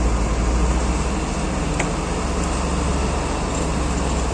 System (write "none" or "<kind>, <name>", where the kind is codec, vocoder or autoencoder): none